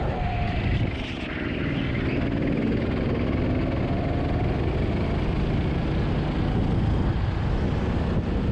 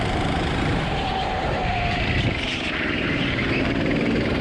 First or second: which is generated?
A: second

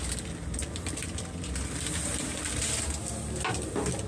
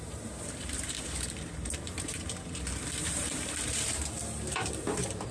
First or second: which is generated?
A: second